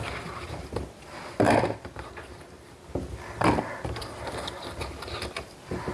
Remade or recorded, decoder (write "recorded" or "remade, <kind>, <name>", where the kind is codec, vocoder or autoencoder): recorded